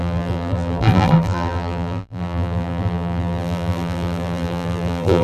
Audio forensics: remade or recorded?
remade